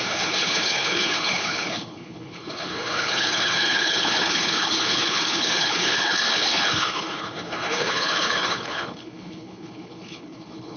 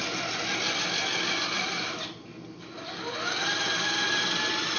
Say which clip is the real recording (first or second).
second